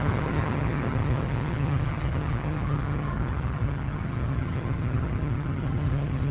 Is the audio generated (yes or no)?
yes